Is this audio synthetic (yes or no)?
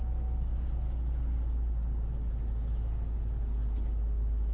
no